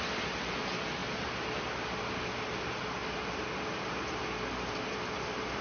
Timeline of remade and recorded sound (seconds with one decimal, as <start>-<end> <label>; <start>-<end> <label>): 0.0-5.6 recorded